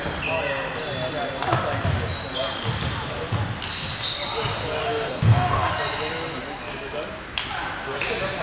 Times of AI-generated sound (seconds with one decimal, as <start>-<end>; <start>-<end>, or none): 4.8-5.7